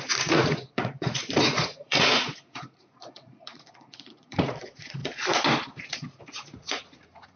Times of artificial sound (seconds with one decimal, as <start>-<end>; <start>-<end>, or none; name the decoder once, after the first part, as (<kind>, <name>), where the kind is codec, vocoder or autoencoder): 0.0-5.0 (vocoder, Vocos); 5.7-7.4

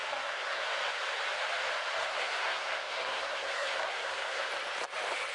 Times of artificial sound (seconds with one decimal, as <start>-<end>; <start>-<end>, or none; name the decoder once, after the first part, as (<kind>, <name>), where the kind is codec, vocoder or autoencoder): 0.0-0.6 (codec, SNAC); 2.0-4.5

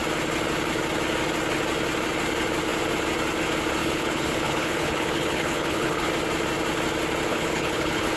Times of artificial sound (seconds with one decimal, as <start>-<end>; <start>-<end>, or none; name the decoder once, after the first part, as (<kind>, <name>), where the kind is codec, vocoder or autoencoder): 3.8-6.1 (codec, HILCodec); 7.3-8.2